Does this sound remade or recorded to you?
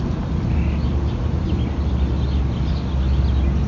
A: recorded